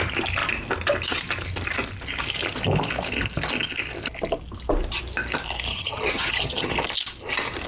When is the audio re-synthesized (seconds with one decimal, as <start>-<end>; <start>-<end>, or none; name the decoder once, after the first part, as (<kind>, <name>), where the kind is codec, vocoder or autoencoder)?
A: 5.7-6.7 (vocoder, HiFi-GAN)